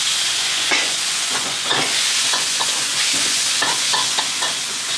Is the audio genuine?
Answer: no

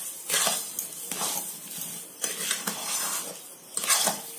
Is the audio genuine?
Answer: yes